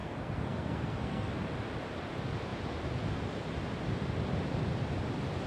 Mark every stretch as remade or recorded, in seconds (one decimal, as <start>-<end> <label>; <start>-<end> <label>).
0.0-1.3 remade; 1.3-5.5 recorded